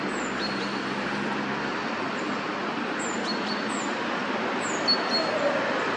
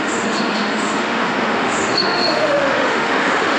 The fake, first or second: second